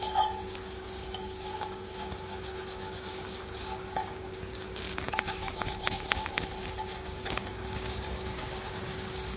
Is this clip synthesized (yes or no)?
yes